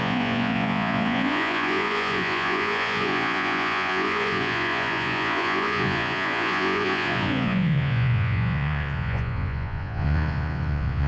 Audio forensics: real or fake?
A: fake